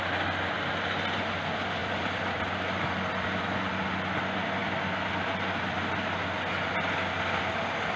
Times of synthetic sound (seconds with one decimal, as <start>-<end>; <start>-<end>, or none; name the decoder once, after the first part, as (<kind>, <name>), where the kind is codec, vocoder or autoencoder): none